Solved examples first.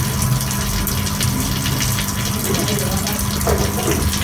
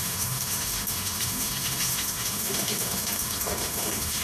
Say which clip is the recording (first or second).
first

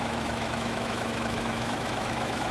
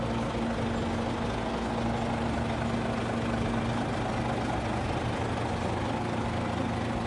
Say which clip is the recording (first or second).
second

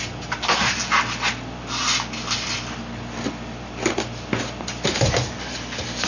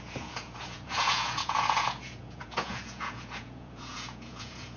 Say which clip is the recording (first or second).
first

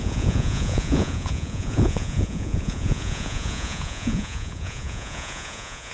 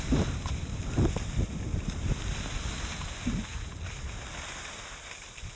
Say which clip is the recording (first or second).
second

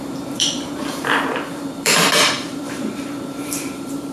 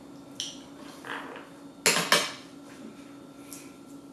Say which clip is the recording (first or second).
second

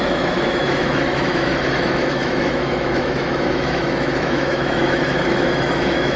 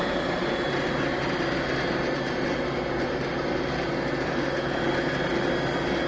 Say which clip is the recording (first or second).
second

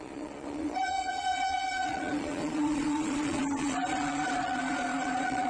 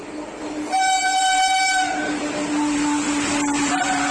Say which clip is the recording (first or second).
second